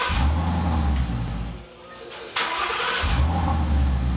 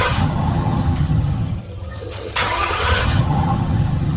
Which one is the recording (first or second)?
first